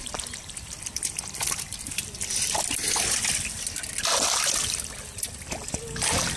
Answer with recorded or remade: recorded